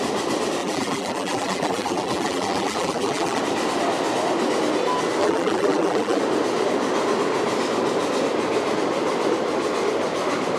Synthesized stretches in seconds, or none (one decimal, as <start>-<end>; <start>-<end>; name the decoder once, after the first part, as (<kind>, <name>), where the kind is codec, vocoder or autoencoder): 0.6-3.4 (vocoder, BigVGAN v2); 5.2-6.2